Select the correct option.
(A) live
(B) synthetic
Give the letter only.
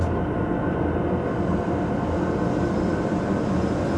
A